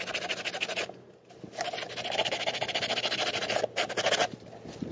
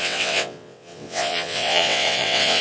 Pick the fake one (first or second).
second